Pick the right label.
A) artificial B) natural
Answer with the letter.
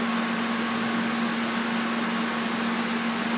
B